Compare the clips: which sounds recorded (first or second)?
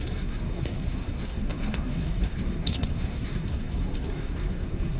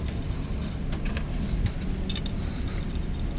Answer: second